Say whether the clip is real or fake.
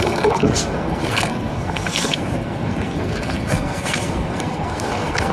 fake